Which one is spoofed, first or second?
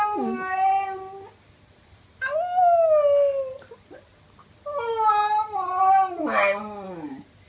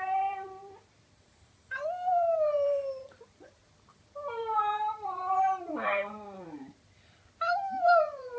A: second